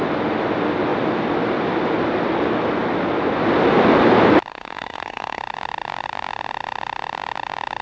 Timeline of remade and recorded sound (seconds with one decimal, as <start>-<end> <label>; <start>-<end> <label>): 0.0-4.5 recorded; 4.5-5.4 remade; 5.4-7.8 recorded